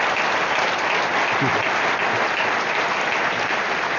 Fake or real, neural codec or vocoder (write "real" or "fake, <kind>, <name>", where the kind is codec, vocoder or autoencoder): fake, vocoder, BigVGAN v2